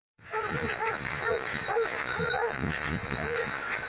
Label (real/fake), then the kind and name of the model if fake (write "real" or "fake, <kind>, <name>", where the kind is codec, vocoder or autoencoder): fake, vocoder, Vocos